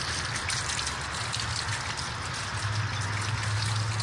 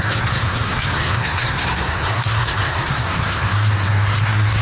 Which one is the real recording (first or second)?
first